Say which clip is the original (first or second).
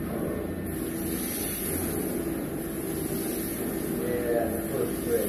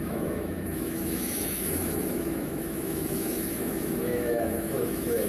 first